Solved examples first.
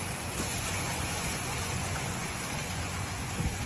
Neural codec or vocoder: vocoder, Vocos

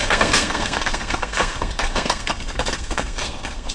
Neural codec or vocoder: codec, SNAC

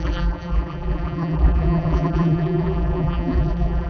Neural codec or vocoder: vocoder, BigVGAN v2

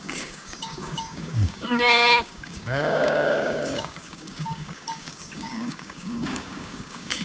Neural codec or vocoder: codec, DAC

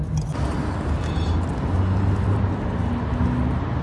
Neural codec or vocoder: none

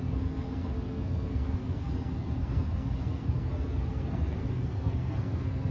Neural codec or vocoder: codec, SNAC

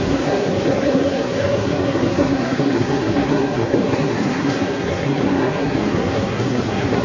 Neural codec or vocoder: codec, SNAC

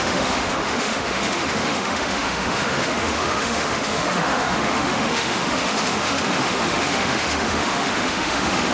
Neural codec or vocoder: autoencoder, DAC-VAE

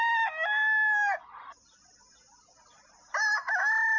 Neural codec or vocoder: none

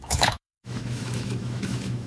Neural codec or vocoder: autoencoder, DAC-VAE